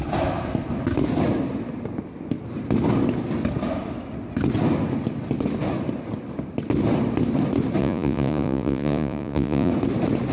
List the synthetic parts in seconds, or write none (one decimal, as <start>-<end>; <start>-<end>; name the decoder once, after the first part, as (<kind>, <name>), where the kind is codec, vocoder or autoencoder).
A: 7.8-9.7 (vocoder, Vocos)